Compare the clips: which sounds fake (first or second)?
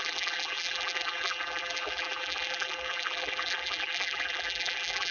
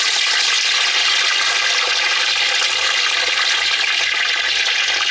first